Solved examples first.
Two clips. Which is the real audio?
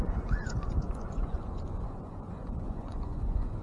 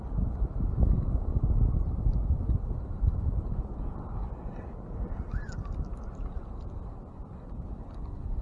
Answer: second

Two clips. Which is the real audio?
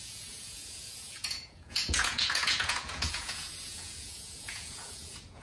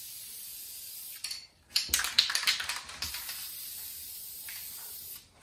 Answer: second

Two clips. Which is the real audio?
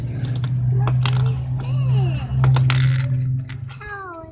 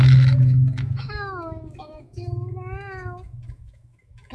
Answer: first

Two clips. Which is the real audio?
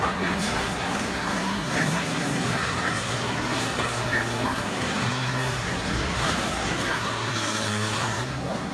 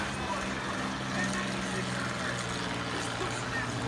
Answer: second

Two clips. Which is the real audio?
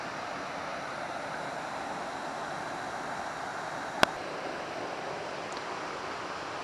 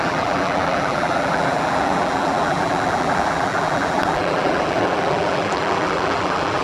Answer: first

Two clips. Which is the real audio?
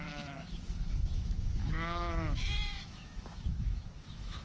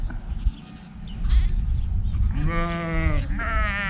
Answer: second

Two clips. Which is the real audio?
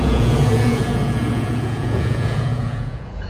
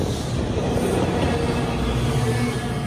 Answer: second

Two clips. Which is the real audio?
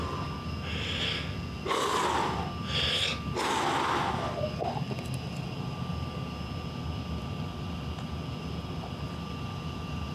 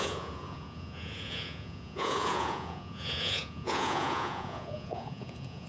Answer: first